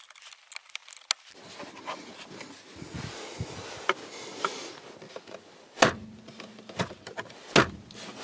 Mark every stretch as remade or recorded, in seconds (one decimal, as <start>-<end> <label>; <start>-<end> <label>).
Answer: 0.0-8.2 recorded